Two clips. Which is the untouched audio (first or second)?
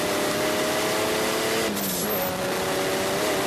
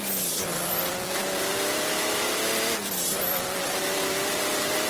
first